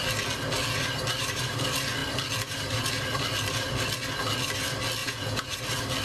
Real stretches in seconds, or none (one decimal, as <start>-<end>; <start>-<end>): 0.0-5.0; 5.6-6.0